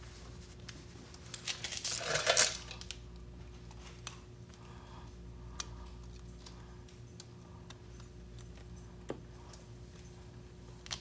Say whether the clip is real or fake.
real